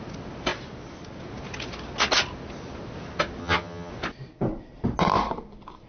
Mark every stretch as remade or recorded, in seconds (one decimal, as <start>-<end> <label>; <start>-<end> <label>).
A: 0.0-3.4 recorded; 3.4-3.9 remade; 3.9-5.9 recorded